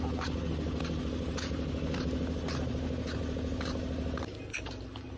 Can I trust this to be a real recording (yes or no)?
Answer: yes